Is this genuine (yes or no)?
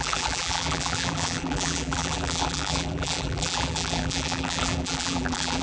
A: no